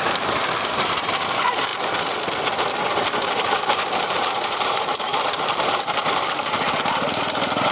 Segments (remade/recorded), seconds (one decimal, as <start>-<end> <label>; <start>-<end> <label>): 0.0-1.7 remade; 1.7-2.7 recorded; 2.7-7.7 remade